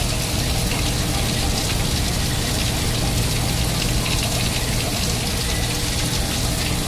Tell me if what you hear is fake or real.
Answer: real